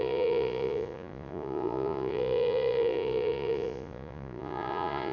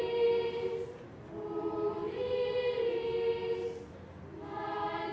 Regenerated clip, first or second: first